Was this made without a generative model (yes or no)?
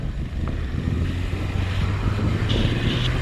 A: yes